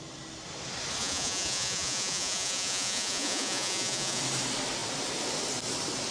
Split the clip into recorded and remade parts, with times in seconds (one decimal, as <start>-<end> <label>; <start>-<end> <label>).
0.0-1.0 recorded; 1.0-4.2 remade; 4.2-6.1 recorded